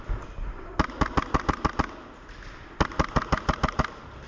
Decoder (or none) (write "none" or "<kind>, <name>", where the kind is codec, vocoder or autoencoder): none